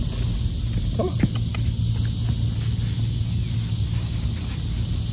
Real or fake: real